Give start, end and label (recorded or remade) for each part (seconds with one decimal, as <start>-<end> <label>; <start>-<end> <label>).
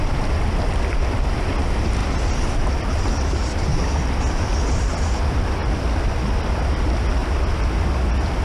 0.0-2.0 remade; 2.0-2.9 recorded; 2.9-3.7 remade; 3.7-4.8 recorded; 4.8-7.2 remade; 7.2-7.7 recorded; 7.7-8.4 remade